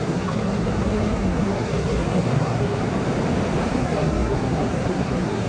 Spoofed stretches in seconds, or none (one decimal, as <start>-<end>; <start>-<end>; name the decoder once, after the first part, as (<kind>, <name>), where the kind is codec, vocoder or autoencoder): 0.0-2.8 (codec, SNAC); 3.6-5.5